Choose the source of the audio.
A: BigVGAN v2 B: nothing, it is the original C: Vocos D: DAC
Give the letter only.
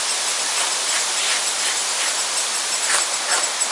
B